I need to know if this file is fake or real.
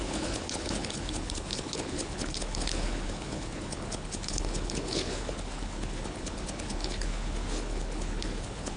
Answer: fake